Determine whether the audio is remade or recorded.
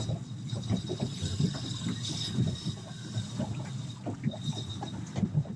recorded